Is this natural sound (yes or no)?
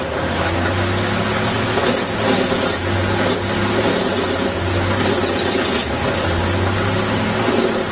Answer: yes